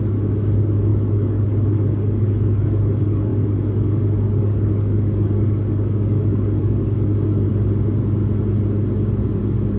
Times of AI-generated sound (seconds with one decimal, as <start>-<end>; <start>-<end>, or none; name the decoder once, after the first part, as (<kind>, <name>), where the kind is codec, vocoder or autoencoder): 0.0-7.5 (codec, DAC); 9.4-9.8